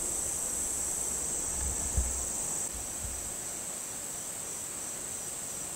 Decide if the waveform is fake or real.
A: real